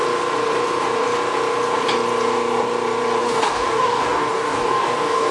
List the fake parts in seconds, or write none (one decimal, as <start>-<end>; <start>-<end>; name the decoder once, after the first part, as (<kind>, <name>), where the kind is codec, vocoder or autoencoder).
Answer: 3.2-5.3 (codec, DAC)